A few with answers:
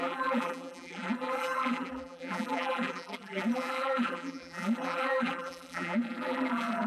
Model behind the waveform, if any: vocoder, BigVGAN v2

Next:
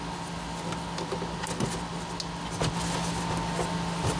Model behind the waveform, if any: none